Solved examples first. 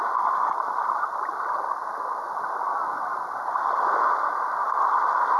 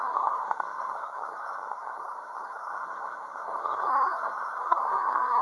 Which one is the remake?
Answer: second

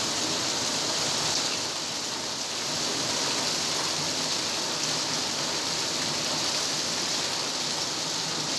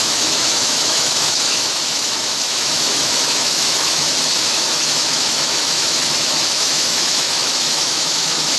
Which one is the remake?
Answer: second